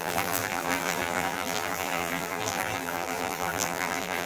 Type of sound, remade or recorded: remade